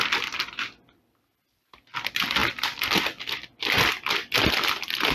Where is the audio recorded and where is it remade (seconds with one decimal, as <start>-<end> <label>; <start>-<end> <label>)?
0.0-5.1 remade